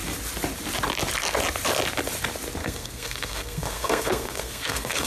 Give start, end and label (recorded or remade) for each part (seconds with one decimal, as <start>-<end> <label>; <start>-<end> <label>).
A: 0.0-2.6 recorded; 2.6-5.1 remade